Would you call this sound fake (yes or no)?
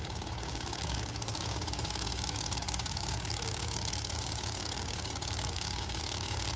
yes